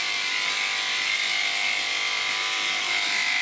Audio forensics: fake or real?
fake